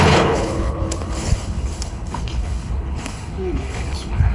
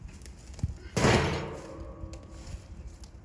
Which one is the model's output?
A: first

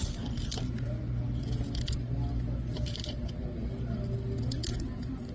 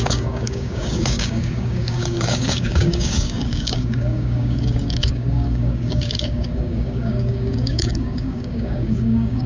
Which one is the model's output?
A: second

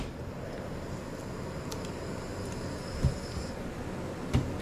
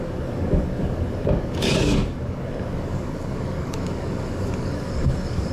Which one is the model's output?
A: second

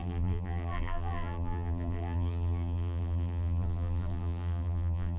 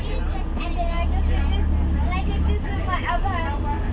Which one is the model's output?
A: first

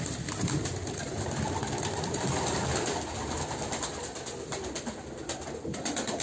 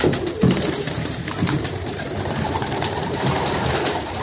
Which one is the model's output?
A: second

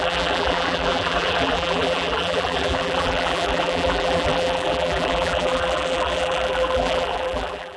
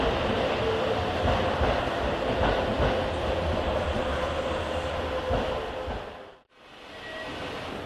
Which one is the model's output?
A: first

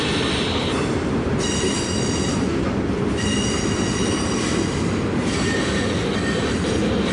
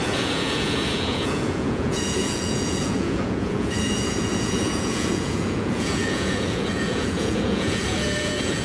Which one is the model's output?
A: second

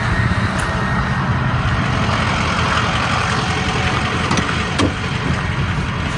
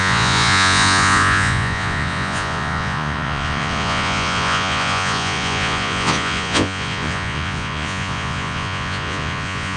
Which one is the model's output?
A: second